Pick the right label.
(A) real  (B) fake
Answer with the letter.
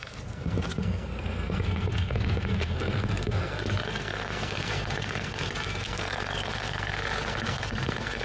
B